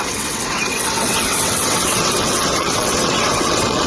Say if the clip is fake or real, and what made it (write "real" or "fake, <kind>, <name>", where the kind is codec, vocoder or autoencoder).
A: fake, vocoder, WaveNeXt